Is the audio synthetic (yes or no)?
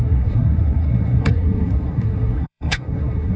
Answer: yes